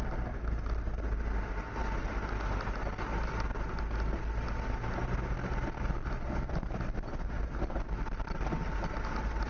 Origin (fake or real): real